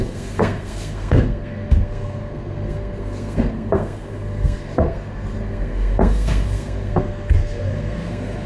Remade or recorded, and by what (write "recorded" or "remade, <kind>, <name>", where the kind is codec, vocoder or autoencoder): remade, codec, SNAC